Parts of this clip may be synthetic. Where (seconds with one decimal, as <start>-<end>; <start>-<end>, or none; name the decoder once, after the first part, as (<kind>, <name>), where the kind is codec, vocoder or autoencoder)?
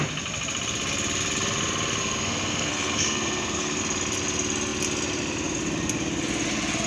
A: 2.0-3.8 (codec, SNAC)